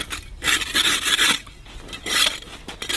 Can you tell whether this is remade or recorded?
recorded